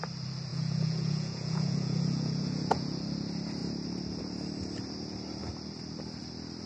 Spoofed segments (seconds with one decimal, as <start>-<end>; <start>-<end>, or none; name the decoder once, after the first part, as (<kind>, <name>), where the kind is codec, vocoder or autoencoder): 0.5-3.0 (vocoder, Vocos)